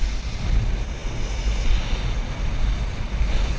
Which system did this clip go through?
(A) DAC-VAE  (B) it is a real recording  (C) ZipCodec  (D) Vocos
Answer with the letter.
B